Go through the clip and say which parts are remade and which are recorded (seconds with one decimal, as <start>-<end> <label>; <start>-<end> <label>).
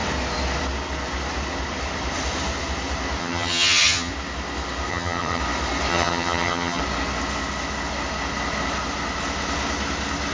0.0-3.2 recorded; 3.2-4.1 remade; 4.1-4.9 recorded; 4.9-5.4 remade; 5.4-5.9 recorded; 5.9-6.8 remade; 6.8-10.3 recorded